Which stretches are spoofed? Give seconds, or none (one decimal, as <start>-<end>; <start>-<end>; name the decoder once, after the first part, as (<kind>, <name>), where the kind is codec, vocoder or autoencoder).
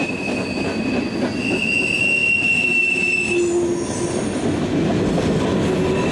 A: none